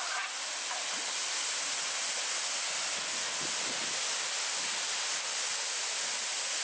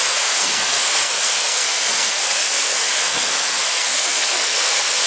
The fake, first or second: second